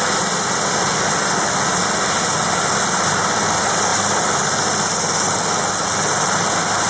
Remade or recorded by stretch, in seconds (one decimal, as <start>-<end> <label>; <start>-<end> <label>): 0.0-3.9 recorded; 3.9-4.6 remade; 4.6-6.9 recorded